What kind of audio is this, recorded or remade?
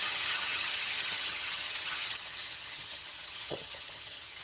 remade